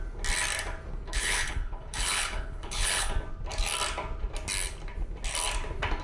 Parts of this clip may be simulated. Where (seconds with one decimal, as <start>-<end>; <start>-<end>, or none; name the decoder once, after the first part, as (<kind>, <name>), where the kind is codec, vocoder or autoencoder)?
1.1-3.1 (codec, HILCodec)